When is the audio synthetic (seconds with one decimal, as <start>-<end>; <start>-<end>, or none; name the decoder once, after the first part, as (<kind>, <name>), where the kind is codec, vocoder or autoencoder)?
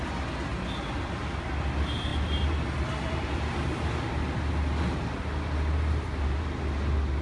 none